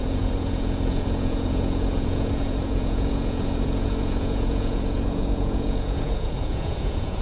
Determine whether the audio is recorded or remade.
remade